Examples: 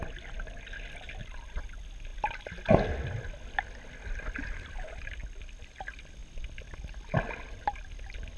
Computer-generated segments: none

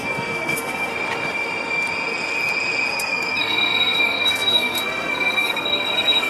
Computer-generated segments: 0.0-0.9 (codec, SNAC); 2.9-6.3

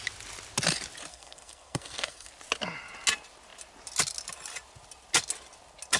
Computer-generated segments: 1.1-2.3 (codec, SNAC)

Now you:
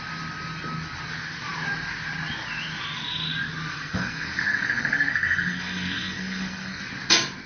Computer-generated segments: 3.7-6.8 (codec, SNAC)

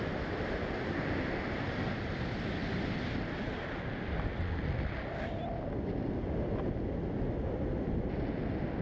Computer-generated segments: none

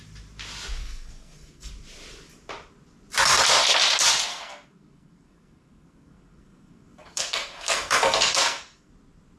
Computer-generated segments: 0.8-1.7 (codec, SNAC); 4.3-8.9

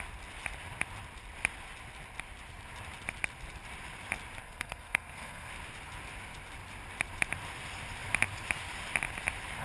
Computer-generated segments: 4.4-5.5 (codec, SNAC)

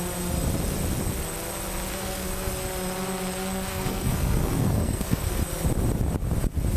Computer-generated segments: 1.9-2.5 (codec, SNAC); 3.7-5.4